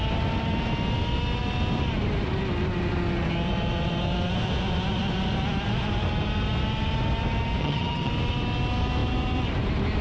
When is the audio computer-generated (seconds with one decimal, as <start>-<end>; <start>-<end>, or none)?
7.6-8.1